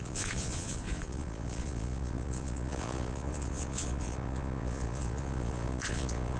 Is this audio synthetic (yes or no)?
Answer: yes